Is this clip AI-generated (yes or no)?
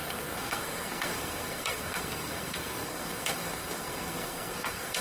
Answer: yes